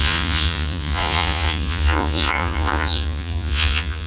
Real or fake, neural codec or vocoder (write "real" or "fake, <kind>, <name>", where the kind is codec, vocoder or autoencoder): fake, vocoder, Vocos